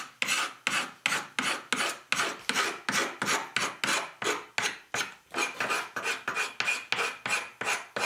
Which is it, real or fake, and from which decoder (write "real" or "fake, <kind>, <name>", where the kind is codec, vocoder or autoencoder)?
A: real